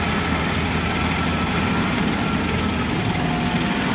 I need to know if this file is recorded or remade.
recorded